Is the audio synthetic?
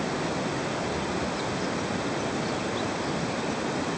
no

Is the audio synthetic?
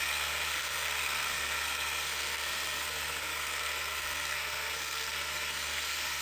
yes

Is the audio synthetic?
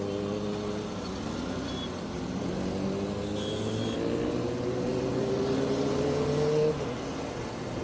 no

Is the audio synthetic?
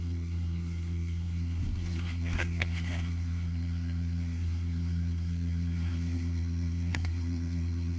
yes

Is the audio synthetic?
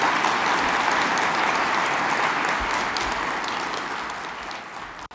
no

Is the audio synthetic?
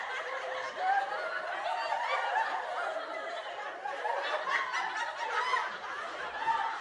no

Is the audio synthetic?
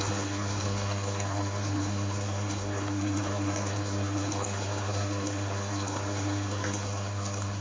yes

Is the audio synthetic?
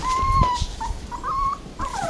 no